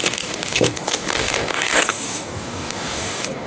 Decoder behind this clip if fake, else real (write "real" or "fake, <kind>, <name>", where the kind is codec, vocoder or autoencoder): fake, codec, DAC